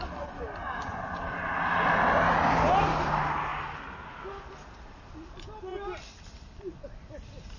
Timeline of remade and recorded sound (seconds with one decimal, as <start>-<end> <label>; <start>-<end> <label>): 0.0-5.7 recorded; 5.7-7.6 remade